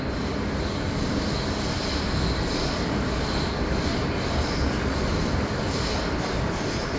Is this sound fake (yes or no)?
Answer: no